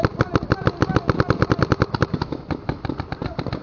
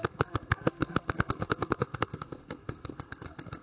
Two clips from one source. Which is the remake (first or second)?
second